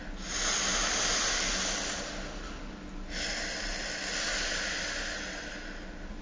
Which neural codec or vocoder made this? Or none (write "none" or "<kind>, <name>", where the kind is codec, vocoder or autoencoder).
none